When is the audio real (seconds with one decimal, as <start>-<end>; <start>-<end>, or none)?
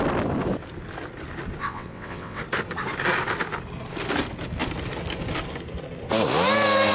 0.0-1.6; 2.4-6.9